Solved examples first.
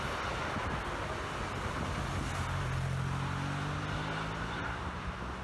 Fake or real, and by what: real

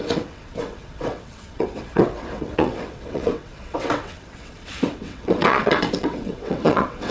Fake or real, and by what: fake, vocoder, WaveNeXt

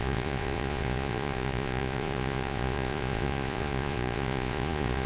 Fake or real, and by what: fake, vocoder, Vocos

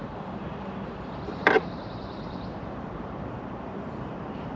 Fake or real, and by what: fake, vocoder, BigVGAN v2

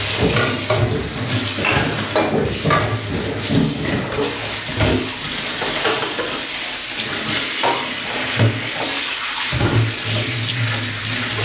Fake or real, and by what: real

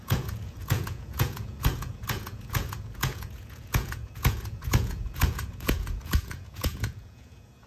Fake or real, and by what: fake, vocoder, Vocos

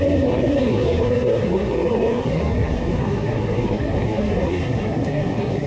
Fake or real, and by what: fake, codec, SNAC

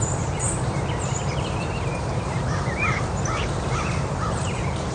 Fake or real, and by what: fake, vocoder, BigVGAN v2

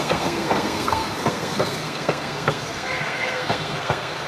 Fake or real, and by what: fake, codec, SNAC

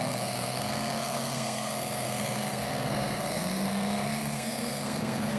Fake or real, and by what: fake, codec, SNAC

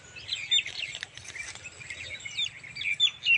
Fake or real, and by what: real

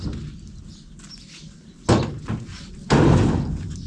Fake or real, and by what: real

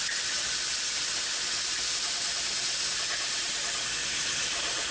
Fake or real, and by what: real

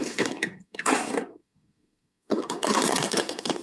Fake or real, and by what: fake, codec, SNAC